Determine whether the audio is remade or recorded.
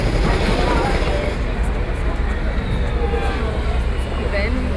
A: recorded